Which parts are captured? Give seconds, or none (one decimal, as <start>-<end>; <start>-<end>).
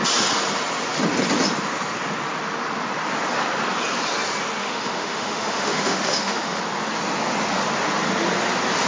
0.0-4.6; 6.6-8.9